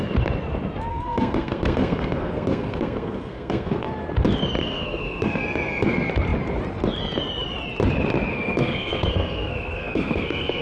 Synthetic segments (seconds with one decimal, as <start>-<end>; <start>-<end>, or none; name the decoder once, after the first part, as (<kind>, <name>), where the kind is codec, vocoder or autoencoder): 0.9-3.9 (codec, SNAC); 4.6-5.4; 8.3-10.6